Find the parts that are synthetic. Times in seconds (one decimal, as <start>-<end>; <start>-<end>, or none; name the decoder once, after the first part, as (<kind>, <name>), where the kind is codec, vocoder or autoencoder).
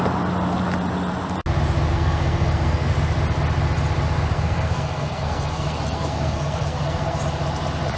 1.9-2.9 (codec, SNAC); 4.3-7.2